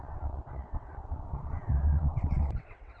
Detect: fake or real fake